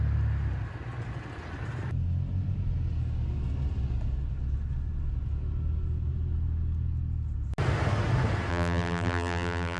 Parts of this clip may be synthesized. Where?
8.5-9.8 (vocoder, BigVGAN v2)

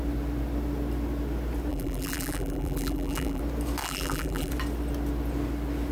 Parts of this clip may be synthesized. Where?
1.7-3.4 (vocoder, BigVGAN v2); 3.8-4.5